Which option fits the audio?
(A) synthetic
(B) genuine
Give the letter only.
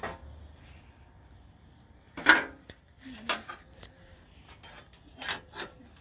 B